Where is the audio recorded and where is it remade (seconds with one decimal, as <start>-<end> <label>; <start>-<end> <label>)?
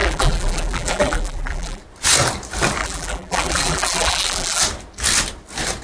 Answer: 0.0-1.8 remade; 1.8-2.8 recorded; 2.8-4.6 remade; 4.6-5.8 recorded